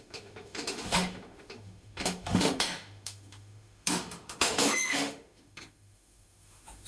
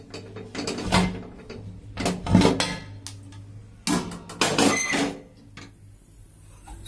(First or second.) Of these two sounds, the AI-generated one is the first